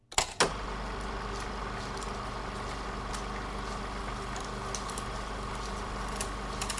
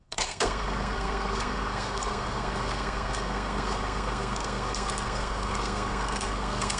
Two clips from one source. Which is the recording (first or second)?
first